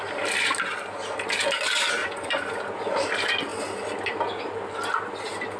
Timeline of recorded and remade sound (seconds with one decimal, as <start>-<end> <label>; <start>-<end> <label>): 0.0-2.0 recorded; 2.0-2.6 remade; 2.6-5.6 recorded